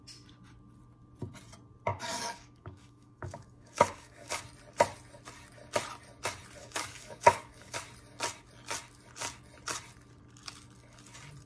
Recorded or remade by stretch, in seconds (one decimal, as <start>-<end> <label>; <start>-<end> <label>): 0.0-1.9 recorded; 1.9-4.4 remade; 4.4-6.6 recorded; 6.6-7.8 remade; 7.8-11.5 recorded